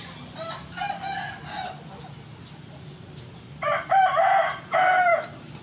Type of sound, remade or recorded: recorded